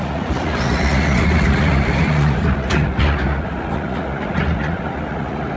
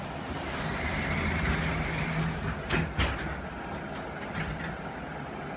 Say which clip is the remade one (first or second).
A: first